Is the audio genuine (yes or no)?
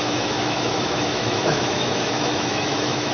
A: no